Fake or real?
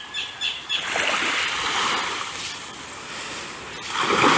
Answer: real